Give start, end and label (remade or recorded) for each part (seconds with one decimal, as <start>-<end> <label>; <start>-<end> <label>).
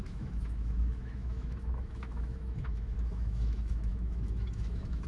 0.0-5.1 remade